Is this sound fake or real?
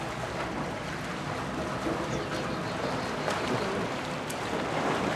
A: real